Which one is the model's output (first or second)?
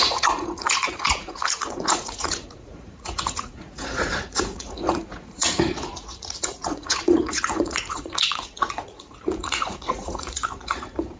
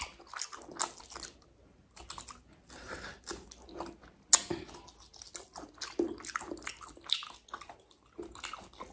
first